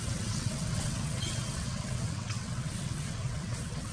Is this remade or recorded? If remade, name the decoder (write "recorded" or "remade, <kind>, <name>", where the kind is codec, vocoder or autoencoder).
remade, vocoder, WaveNeXt